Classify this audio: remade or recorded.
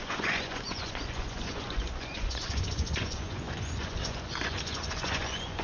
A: remade